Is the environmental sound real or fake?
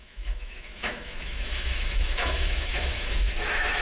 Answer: fake